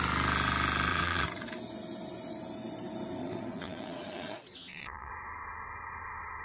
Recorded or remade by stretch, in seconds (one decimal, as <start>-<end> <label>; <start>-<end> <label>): 0.0-0.9 recorded; 0.9-1.5 remade; 1.5-3.2 recorded; 3.2-5.1 remade; 5.1-6.4 recorded